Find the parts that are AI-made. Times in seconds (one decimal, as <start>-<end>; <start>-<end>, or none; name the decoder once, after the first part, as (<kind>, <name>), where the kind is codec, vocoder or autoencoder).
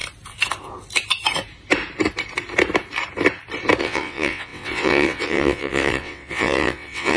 3.8-7.2 (vocoder, WaveNeXt)